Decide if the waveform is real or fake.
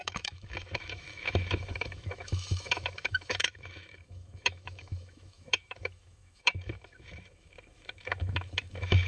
fake